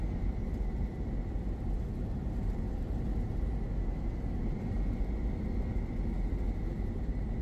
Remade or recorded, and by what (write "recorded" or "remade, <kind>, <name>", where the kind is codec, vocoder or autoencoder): recorded